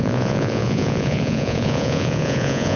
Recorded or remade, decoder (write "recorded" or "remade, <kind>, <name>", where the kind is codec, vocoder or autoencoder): remade, vocoder, Vocos